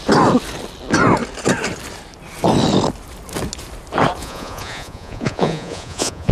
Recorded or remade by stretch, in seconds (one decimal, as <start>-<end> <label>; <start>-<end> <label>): 0.0-4.2 recorded; 4.2-6.3 remade